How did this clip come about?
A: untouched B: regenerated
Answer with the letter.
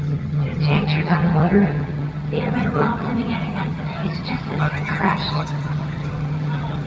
B